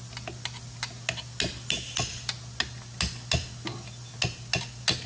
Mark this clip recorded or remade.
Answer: recorded